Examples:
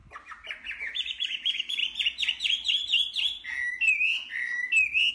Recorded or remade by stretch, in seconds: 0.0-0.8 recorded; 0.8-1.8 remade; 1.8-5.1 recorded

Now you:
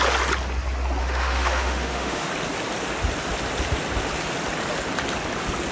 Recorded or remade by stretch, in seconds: 0.0-1.0 recorded; 1.0-2.3 remade; 2.3-5.7 recorded

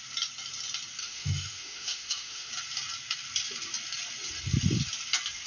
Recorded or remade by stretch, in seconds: 0.0-1.0 recorded; 1.0-2.5 remade; 2.5-5.5 recorded